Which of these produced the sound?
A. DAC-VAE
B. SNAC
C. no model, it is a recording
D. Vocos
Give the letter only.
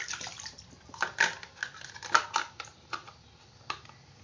C